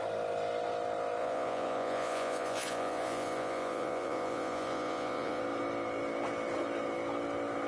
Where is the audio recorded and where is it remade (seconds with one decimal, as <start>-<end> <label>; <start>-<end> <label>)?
0.0-1.2 recorded; 1.2-5.4 remade; 5.4-7.7 recorded